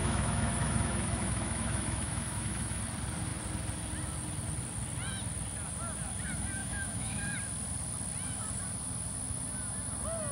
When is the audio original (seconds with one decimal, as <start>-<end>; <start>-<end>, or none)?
2.8-6.6; 7.2-10.3